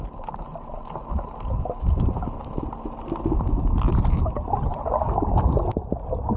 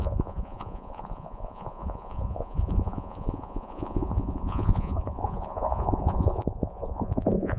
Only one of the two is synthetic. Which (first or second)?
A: second